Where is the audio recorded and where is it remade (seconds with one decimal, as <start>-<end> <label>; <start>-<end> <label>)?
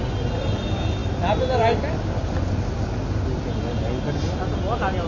0.0-5.1 recorded